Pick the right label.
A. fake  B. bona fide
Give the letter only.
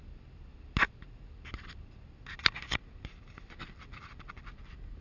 B